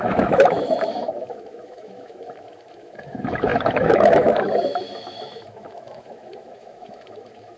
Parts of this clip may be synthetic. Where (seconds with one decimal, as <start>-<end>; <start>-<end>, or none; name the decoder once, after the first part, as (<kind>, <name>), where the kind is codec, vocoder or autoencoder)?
0.0-7.6 (autoencoder, DAC-VAE)